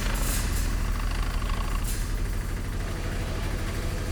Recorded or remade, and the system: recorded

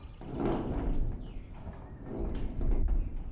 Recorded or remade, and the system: recorded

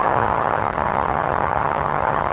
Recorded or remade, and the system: remade, vocoder, HiFi-GAN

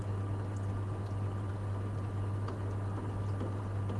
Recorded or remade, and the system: recorded